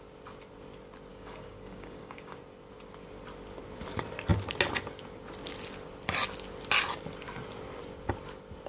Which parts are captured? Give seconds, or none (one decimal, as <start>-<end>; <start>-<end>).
0.0-1.1; 2.4-8.7